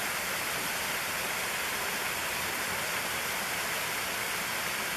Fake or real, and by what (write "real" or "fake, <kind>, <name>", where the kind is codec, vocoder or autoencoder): real